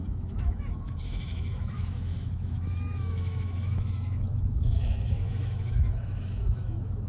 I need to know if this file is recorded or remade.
remade